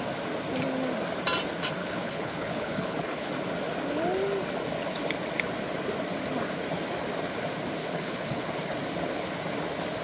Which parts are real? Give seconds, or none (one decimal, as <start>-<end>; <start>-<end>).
0.0-1.8; 3.3-7.8; 8.5-10.0